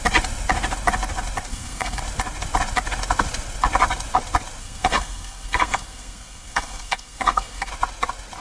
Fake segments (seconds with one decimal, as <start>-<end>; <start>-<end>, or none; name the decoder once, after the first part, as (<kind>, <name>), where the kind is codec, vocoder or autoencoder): 1.5-2.0 (codec, SNAC); 4.6-7.7